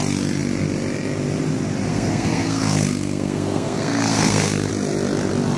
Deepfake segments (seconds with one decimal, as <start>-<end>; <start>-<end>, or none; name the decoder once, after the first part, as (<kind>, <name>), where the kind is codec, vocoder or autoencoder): 1.9-4.7 (codec, SNAC)